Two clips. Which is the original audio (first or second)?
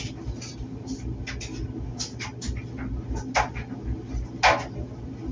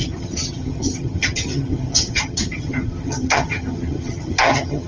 first